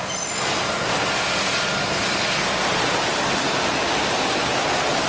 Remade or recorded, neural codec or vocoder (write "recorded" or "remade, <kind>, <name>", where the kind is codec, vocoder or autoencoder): recorded